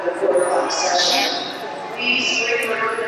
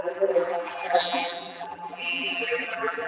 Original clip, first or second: first